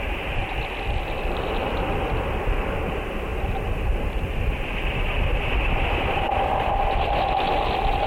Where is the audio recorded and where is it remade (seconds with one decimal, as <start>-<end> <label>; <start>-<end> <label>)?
0.0-8.1 recorded